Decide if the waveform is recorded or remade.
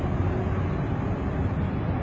recorded